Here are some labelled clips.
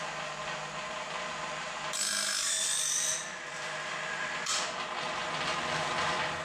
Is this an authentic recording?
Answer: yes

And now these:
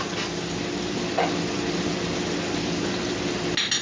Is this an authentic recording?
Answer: yes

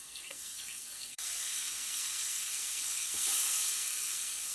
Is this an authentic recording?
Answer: no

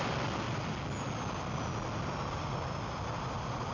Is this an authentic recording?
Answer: yes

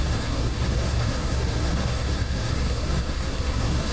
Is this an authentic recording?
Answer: no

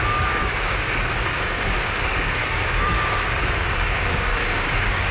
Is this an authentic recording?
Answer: no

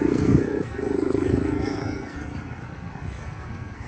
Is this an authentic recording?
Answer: no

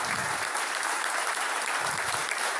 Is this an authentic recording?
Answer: no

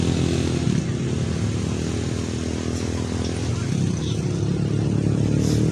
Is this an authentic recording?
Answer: yes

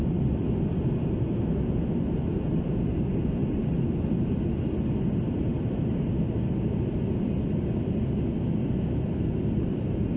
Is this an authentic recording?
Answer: yes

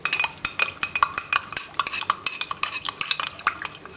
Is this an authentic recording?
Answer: yes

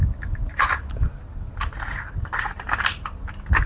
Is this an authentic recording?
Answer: yes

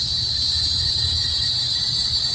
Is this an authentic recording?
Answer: no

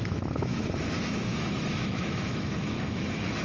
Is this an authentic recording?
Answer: no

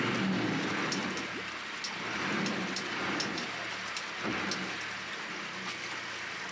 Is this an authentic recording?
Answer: yes